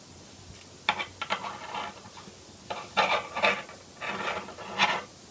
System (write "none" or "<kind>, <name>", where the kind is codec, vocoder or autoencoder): none